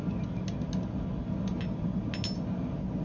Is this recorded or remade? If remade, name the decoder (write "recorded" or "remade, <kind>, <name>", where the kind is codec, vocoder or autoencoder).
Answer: recorded